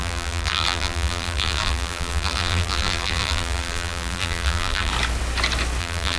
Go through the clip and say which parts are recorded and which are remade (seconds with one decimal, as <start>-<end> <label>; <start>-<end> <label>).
0.0-4.9 remade; 4.9-5.8 recorded; 5.8-6.2 remade